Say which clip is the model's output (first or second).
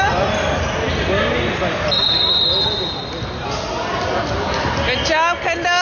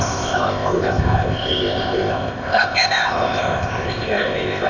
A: second